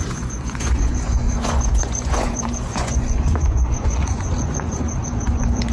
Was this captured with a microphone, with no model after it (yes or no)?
no